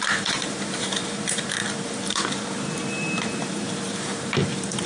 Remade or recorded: remade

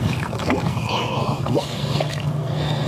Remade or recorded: remade